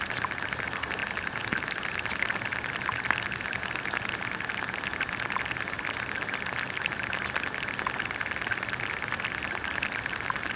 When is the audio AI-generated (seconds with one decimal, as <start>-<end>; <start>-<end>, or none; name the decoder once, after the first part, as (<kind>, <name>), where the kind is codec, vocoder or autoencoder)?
none